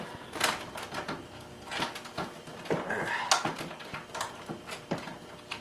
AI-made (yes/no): no